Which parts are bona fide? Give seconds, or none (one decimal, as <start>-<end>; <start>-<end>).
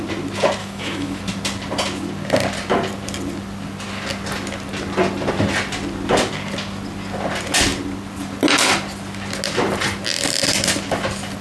0.0-0.6; 1.2-11.4